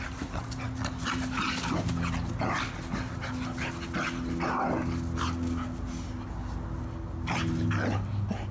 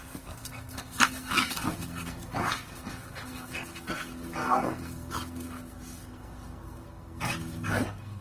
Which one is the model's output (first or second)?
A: second